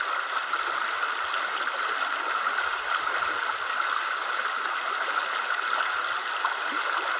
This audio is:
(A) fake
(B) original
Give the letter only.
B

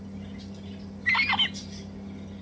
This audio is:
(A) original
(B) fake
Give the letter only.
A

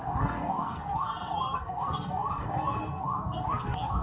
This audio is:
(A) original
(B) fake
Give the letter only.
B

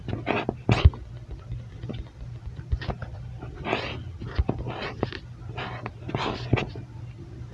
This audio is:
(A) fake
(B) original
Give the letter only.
B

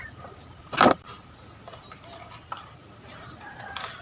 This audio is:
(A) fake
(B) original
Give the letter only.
A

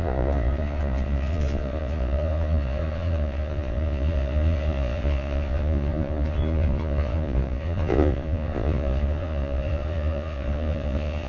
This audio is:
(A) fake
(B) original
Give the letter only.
A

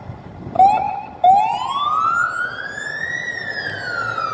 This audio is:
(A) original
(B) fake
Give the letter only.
A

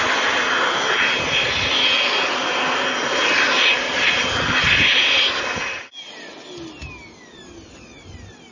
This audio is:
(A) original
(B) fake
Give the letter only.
A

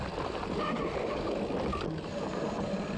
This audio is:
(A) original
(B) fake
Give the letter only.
A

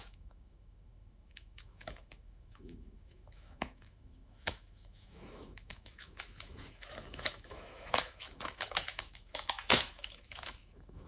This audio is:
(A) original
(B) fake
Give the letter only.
B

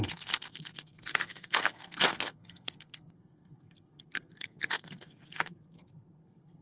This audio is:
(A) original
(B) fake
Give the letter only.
B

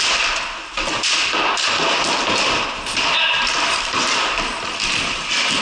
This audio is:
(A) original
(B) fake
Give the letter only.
A